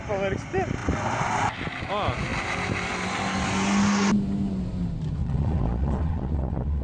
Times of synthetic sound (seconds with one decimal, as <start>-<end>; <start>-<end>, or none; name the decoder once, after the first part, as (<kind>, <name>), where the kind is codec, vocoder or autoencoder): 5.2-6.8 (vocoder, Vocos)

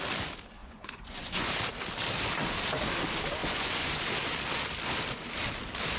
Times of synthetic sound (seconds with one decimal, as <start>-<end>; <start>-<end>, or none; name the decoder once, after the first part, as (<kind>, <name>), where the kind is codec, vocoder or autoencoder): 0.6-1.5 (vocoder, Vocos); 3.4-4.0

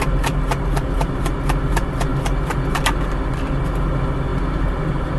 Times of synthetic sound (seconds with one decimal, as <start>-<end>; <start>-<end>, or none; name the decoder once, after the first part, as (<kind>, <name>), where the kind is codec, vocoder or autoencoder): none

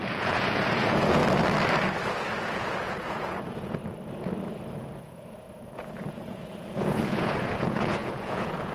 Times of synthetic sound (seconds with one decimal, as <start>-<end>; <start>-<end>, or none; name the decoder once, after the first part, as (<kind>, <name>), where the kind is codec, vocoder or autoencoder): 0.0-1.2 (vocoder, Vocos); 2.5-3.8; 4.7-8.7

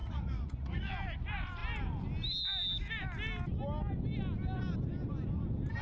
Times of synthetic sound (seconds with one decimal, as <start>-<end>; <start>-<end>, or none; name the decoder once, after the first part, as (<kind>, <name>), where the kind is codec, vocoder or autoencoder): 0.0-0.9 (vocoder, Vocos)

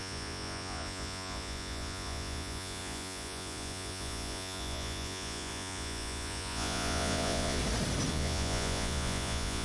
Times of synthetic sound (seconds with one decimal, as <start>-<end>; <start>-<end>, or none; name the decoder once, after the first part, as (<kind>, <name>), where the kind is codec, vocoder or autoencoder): 0.0-7.6 (vocoder, Vocos); 8.1-9.6